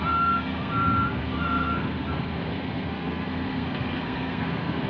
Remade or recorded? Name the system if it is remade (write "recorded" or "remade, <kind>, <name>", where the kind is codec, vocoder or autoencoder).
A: remade, codec, SNAC